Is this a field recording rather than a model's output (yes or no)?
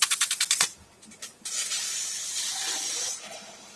yes